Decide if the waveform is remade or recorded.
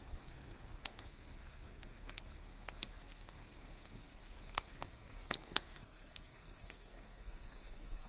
remade